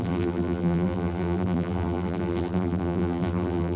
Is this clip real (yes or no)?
no